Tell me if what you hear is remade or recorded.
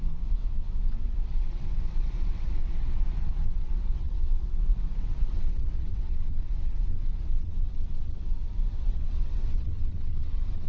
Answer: remade